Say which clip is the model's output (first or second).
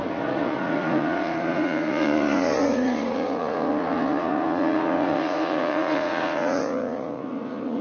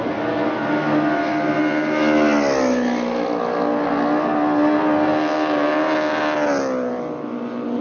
first